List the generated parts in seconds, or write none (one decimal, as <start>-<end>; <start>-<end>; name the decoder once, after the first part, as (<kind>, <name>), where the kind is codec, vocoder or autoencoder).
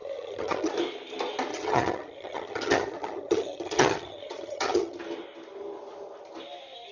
0.0-0.7 (vocoder, HiFi-GAN); 1.5-5.0